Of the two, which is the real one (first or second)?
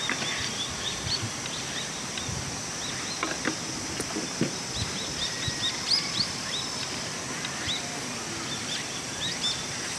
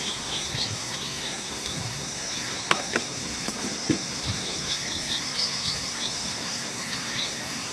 first